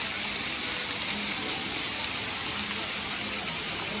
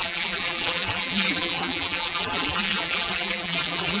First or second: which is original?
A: first